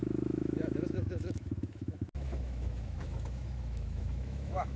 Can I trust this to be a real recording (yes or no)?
no